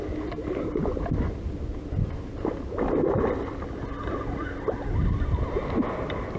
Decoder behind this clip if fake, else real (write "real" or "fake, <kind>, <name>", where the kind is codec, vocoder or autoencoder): real